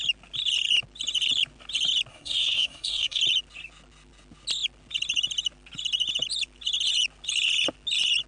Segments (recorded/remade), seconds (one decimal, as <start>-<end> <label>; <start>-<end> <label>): 0.0-2.1 recorded; 2.1-3.2 remade; 3.2-8.3 recorded